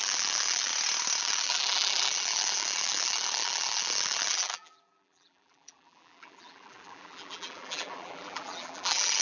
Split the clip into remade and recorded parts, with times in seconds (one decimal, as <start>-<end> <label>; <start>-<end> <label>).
0.0-0.7 remade; 0.7-1.2 recorded; 1.2-9.2 remade